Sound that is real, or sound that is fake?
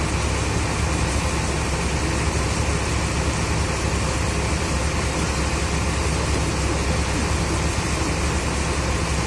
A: real